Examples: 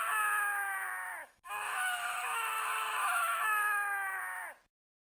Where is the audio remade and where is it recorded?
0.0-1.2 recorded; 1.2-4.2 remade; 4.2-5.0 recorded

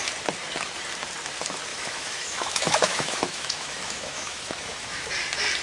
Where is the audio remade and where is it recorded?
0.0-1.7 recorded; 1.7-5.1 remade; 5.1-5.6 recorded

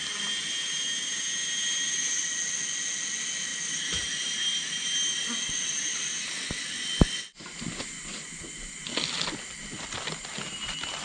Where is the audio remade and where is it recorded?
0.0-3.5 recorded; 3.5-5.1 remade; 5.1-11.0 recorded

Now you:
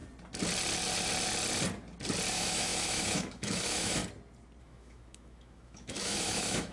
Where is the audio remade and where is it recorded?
0.0-2.3 recorded; 2.3-4.0 remade; 4.0-4.6 recorded; 4.6-6.7 remade

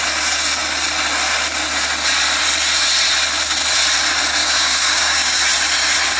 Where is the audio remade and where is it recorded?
0.0-4.4 recorded; 4.4-5.4 remade; 5.4-6.2 recorded

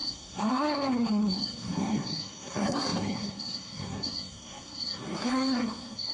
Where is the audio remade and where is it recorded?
0.0-6.1 remade